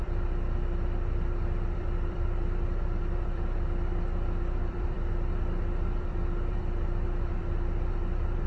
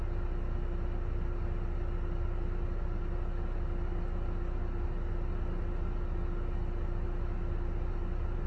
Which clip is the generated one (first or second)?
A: first